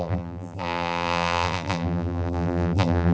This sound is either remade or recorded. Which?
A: remade